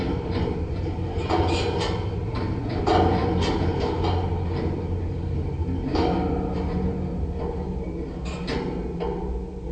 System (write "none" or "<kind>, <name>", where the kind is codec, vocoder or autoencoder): none